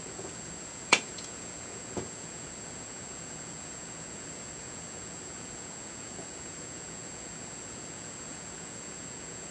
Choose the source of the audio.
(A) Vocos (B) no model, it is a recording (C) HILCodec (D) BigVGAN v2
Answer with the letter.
A